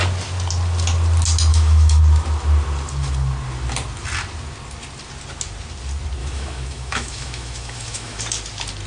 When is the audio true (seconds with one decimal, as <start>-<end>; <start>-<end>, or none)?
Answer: 0.0-1.5; 2.0-6.2; 8.2-8.9